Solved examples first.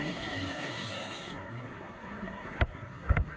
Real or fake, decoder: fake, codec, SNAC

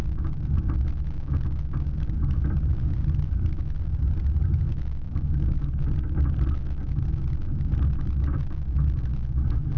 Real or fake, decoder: real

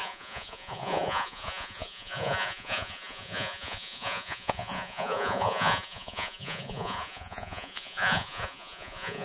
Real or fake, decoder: fake, vocoder, Vocos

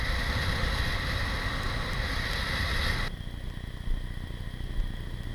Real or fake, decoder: real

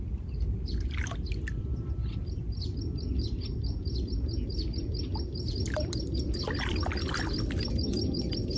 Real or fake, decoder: real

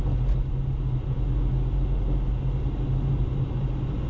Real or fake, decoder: real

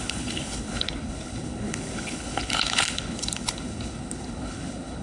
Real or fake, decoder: fake, codec, HILCodec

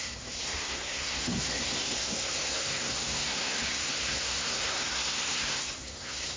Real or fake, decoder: fake, codec, SNAC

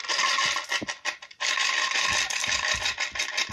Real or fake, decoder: real